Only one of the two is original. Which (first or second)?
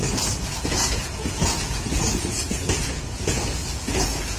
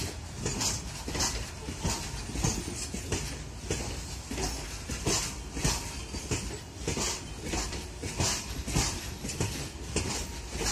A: second